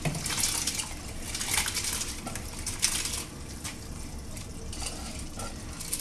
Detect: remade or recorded recorded